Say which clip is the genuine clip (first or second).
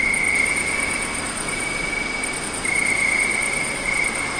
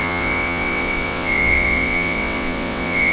first